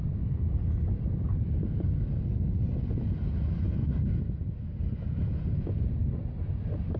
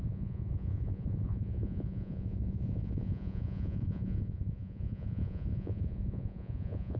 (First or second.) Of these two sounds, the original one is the first